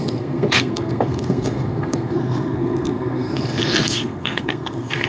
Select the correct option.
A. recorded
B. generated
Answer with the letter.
B